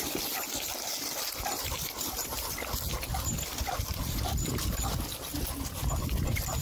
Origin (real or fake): real